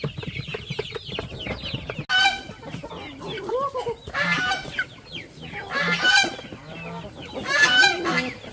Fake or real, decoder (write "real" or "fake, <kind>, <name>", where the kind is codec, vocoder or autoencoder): real